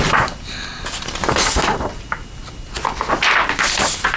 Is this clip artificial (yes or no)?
no